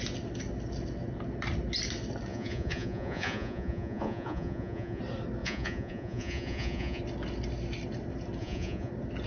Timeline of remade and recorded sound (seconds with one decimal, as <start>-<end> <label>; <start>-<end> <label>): 0.0-2.3 recorded; 2.3-5.0 remade; 5.0-5.4 recorded; 5.4-7.0 remade; 7.0-8.4 recorded; 8.4-8.9 remade; 8.9-9.3 recorded